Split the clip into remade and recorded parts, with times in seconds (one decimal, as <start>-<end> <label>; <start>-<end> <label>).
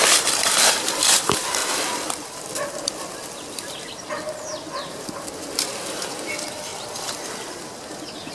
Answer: 0.0-1.6 recorded; 1.6-4.1 remade; 4.1-6.7 recorded; 6.7-7.8 remade; 7.8-8.3 recorded